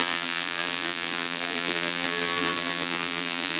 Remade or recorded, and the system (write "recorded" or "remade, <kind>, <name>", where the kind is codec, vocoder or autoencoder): remade, vocoder, BigVGAN v2